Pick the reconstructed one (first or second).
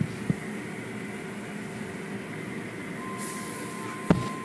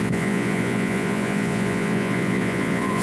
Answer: second